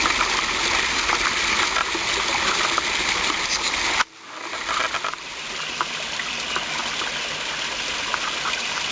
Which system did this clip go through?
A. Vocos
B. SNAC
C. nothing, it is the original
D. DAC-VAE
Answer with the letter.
C